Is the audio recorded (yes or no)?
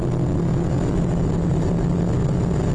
yes